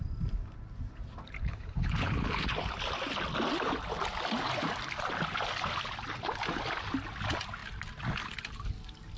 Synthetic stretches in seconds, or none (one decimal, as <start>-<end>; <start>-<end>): 1.4-2.3